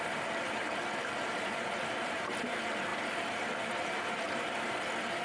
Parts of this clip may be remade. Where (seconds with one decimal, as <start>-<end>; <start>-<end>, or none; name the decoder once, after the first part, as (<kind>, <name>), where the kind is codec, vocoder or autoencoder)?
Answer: 2.9-3.7 (vocoder, BigVGAN v2)